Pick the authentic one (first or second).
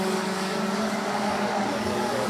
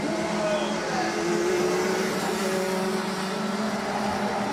second